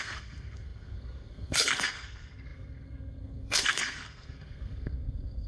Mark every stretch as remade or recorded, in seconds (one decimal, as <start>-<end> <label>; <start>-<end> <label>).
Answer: 0.0-5.5 remade

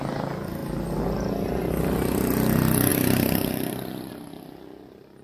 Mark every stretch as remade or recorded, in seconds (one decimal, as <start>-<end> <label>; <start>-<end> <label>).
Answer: 0.0-2.9 recorded; 2.9-4.1 remade; 4.1-5.2 recorded

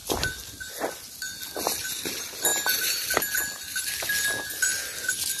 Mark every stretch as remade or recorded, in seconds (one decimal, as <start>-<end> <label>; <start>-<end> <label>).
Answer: 0.0-5.4 recorded

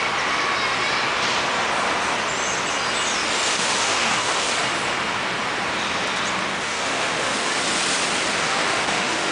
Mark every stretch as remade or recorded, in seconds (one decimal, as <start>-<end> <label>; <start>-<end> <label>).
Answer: 0.0-3.5 recorded; 3.5-4.5 remade; 4.5-6.5 recorded; 6.5-7.6 remade; 7.6-8.4 recorded; 8.4-9.3 remade

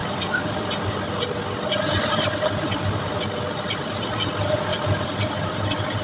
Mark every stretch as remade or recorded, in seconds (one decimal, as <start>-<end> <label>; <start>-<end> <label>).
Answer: 0.0-6.0 recorded

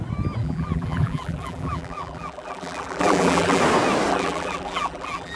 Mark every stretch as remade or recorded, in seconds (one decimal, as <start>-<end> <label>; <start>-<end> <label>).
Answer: 0.0-0.4 recorded; 0.4-3.6 remade; 3.6-4.1 recorded; 4.1-5.4 remade

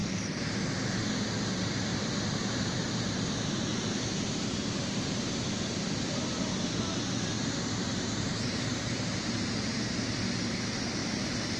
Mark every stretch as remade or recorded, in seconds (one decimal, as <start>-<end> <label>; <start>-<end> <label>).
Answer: 0.0-1.0 remade; 1.0-1.9 recorded; 1.9-6.2 remade; 6.2-7.8 recorded; 7.8-10.1 remade; 10.1-11.0 recorded; 11.0-11.6 remade

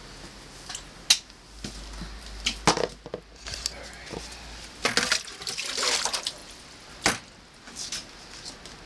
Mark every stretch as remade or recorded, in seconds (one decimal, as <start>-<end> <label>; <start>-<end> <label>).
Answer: 0.0-8.9 recorded